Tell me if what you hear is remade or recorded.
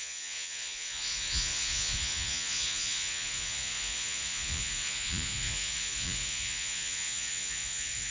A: remade